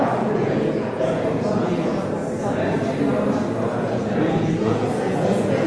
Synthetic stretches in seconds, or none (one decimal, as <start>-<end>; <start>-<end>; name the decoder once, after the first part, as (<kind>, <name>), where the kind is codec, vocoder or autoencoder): 0.0-1.9 (vocoder, Vocos); 3.8-5.7